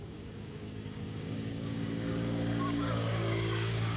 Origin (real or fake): fake